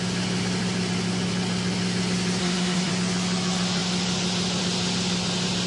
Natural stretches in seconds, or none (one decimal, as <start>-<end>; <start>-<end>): 0.0-2.4; 2.9-5.7